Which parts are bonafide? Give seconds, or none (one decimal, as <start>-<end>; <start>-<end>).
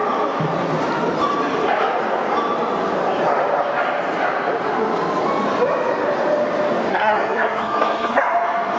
0.0-6.9; 8.2-8.8